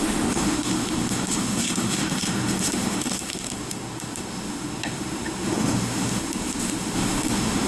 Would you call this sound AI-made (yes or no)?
yes